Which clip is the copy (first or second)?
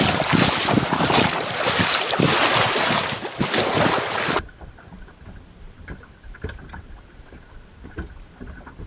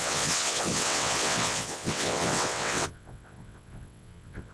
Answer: second